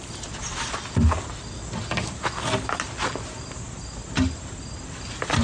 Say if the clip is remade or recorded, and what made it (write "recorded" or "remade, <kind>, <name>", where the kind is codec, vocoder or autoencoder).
recorded